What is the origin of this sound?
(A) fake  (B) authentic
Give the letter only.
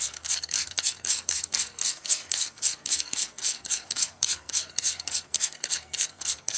A